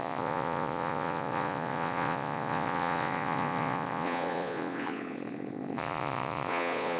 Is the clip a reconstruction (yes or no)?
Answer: yes